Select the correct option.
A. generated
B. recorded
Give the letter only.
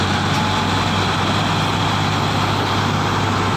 B